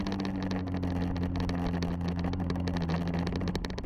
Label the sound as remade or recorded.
recorded